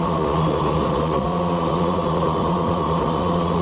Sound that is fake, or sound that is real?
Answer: fake